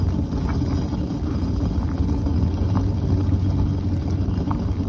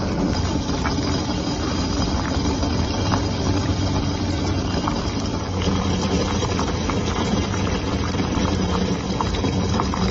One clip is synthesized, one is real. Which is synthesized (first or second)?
second